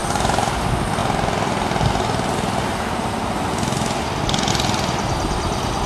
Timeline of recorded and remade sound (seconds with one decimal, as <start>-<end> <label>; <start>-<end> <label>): 0.0-0.6 remade; 0.6-5.9 recorded